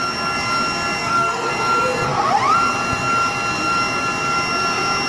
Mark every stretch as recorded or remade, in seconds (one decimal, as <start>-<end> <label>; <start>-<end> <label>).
0.0-1.0 recorded; 1.0-1.5 remade; 1.5-5.1 recorded